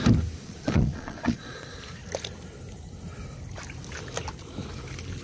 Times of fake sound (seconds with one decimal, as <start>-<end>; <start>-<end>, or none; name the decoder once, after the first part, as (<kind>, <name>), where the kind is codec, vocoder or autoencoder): 0.4-1.7 (vocoder, Vocos)